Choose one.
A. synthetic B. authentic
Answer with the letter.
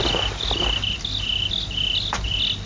B